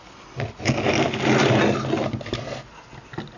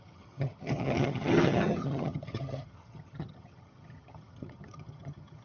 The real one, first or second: first